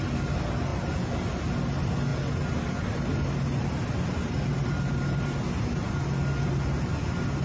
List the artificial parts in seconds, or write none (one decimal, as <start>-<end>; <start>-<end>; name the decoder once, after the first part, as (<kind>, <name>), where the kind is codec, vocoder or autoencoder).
none